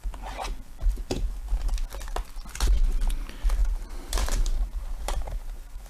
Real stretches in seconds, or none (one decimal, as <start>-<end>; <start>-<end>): 0.0-3.6